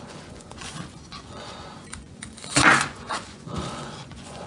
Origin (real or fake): fake